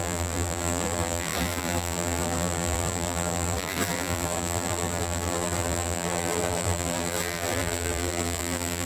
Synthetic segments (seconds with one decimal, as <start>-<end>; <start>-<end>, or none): 0.0-8.9